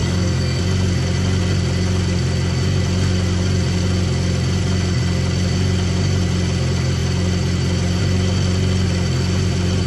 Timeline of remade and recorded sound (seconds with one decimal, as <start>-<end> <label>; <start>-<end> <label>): 0.0-0.6 remade; 0.6-9.9 recorded